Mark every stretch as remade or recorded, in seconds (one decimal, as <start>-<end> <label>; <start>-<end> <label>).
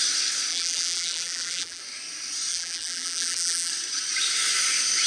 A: 0.0-0.5 recorded; 0.5-1.8 remade; 1.8-2.5 recorded; 2.5-3.7 remade; 3.7-5.1 recorded